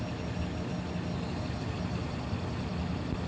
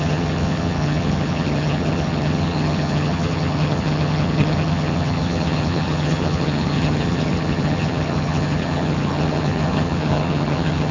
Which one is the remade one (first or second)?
second